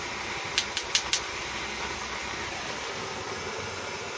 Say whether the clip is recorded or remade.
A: recorded